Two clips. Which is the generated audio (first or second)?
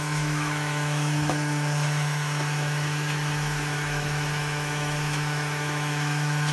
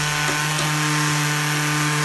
first